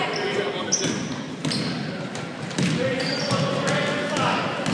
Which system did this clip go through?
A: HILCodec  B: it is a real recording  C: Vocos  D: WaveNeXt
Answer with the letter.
B